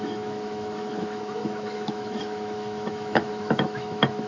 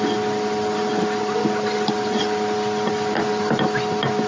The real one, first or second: second